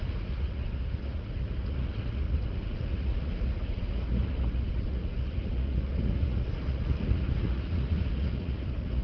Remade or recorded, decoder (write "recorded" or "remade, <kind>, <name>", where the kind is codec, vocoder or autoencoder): remade, vocoder, Vocos